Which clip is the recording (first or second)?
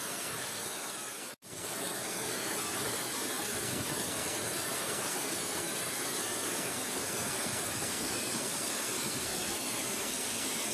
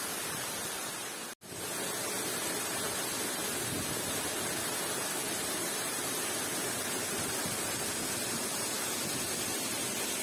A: second